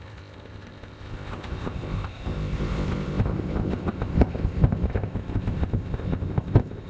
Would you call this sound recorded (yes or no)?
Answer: no